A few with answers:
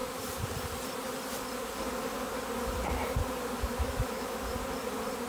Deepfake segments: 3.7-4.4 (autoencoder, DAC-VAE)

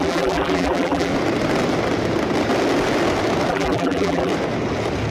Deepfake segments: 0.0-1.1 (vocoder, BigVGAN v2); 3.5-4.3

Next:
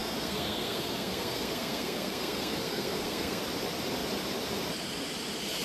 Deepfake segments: 0.0-3.4 (codec, SNAC)

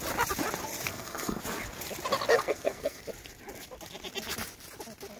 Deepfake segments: 0.9-1.4 (codec, SNAC); 2.3-3.0

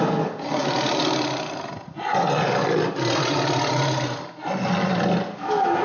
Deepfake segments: none

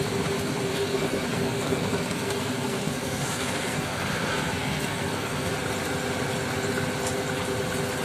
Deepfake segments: 0.7-5.5 (codec, SNAC)

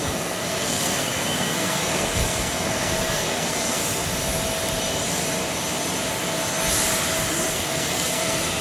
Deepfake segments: 0.0-3.8 (codec, SNAC); 7.5-8.6

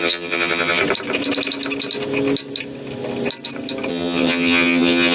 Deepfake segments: 0.0-0.8 (vocoder, HiFi-GAN); 3.9-5.1